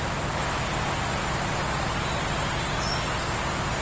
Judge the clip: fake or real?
real